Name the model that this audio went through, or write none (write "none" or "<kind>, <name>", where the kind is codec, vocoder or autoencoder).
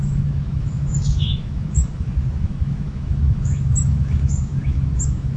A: autoencoder, DAC-VAE